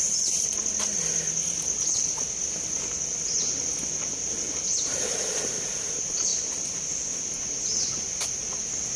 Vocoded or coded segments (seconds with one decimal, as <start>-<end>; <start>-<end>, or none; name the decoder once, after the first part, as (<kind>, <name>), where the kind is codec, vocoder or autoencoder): none